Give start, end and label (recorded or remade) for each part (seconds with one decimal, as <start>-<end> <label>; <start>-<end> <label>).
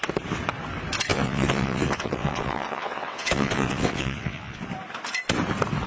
0.0-1.1 recorded; 1.1-4.6 remade; 4.6-5.9 recorded